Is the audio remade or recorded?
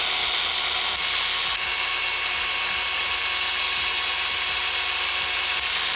recorded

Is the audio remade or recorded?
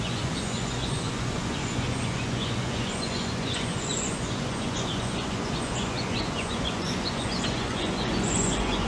remade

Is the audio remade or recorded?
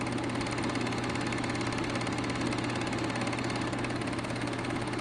recorded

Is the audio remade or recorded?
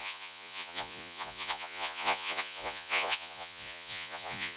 remade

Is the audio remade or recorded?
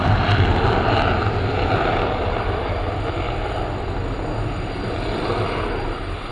recorded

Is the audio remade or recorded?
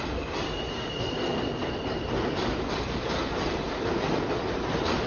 recorded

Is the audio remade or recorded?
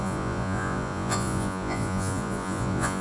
remade